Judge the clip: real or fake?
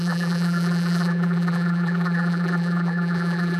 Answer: fake